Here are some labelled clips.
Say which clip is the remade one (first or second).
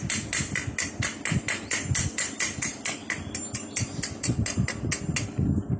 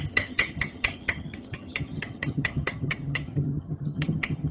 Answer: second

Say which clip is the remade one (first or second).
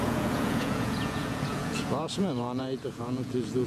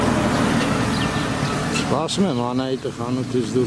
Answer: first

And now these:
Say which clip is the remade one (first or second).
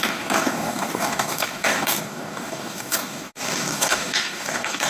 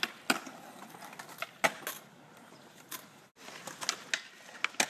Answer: first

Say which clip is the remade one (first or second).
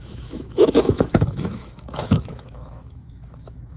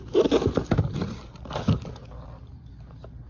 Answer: first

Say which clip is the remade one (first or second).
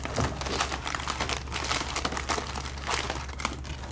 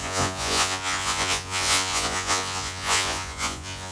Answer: second